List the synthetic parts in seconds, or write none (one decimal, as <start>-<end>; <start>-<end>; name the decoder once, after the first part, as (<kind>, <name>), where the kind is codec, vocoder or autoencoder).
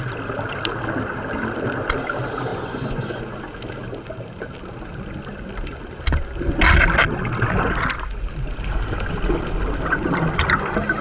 2.5-3.2 (vocoder, Vocos)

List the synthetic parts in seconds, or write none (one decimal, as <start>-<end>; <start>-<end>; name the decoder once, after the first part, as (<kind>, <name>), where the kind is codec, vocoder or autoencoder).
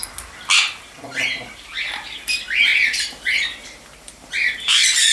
1.5-5.1 (vocoder, BigVGAN v2)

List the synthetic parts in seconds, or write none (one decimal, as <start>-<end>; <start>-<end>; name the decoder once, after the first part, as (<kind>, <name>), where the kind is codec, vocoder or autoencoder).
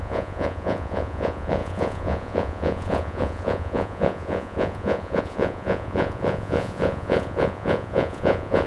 0.0-8.7 (vocoder, Vocos)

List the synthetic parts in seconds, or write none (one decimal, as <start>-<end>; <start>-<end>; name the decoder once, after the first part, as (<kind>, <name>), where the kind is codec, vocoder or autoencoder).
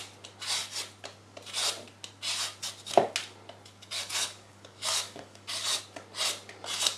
4.0-5.8 (codec, DAC)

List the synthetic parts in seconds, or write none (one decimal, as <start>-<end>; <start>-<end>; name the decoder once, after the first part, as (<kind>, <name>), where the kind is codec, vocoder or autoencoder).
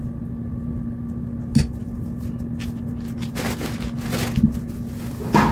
none